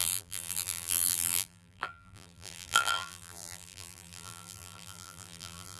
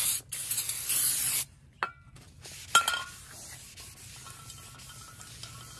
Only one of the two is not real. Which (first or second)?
first